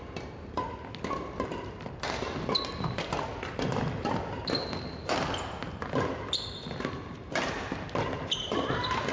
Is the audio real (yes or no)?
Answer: yes